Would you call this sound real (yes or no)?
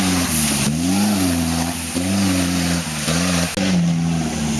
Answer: yes